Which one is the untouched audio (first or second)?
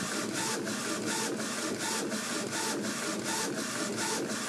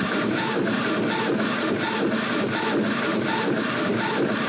first